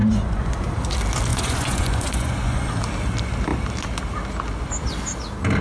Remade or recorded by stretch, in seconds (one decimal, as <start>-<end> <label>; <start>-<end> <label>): 0.0-0.5 remade; 0.5-1.3 recorded; 1.3-2.7 remade; 2.7-5.6 recorded